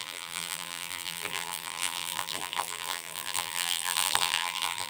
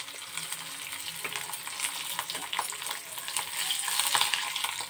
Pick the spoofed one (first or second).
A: first